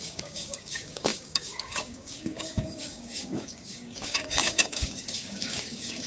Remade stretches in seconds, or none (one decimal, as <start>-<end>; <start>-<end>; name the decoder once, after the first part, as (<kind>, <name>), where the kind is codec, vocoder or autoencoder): 0.0-6.1 (codec, DAC)